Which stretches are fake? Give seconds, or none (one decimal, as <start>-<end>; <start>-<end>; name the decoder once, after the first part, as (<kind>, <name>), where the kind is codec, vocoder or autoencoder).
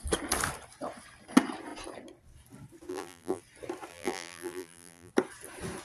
2.9-3.4 (vocoder, BigVGAN v2); 3.9-5.1